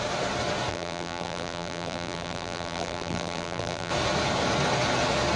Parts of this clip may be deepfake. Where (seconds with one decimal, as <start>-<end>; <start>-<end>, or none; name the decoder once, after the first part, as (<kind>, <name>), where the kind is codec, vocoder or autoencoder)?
0.7-3.9 (vocoder, BigVGAN v2)